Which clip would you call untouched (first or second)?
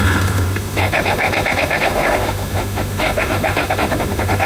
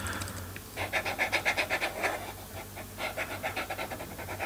second